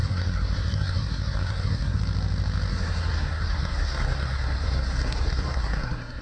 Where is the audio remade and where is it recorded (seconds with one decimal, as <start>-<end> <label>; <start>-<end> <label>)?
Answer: 0.0-2.0 remade; 2.0-2.7 recorded; 2.7-6.2 remade